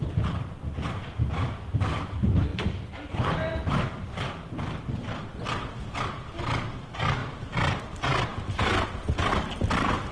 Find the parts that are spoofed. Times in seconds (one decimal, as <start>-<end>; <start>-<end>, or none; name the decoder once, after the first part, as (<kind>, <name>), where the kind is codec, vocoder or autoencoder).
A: 8.3-9.3 (vocoder, Vocos)

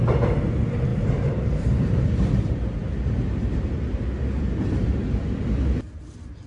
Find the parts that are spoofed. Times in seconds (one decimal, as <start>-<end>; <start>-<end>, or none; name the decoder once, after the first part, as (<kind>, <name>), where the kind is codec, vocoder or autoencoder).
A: 0.9-2.3 (vocoder, BigVGAN v2)

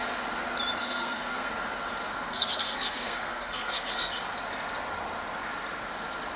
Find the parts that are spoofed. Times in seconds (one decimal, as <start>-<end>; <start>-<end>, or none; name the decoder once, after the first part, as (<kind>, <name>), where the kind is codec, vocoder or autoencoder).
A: 0.8-1.5 (codec, SNAC); 2.3-4.1

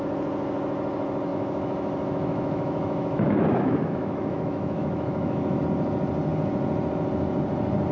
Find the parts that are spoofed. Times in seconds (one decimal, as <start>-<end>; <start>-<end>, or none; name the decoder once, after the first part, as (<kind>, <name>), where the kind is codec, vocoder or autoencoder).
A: 1.3-5.6 (autoencoder, DAC-VAE)